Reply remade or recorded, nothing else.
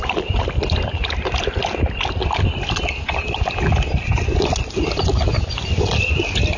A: recorded